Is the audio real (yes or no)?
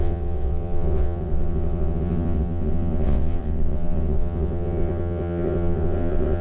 no